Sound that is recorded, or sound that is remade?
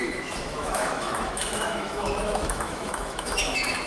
remade